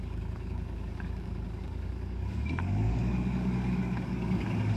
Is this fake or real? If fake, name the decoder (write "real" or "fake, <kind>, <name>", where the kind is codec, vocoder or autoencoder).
fake, codec, DAC